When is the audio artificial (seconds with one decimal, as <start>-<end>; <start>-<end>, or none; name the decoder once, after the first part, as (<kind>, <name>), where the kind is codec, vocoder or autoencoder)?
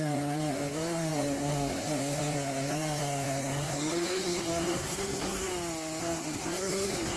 0.0-5.5 (codec, SNAC); 6.0-7.2